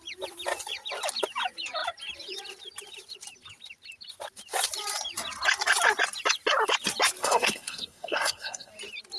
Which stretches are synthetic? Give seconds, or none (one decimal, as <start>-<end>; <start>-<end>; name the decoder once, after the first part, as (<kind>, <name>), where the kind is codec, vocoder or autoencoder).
7.2-8.7 (codec, SNAC)